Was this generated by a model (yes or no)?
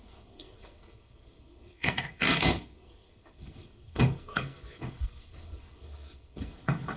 yes